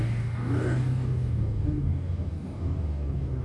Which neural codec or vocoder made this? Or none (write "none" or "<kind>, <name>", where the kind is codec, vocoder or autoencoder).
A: codec, DAC